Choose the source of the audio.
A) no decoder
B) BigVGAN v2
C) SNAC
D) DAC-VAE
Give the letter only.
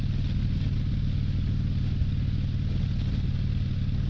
A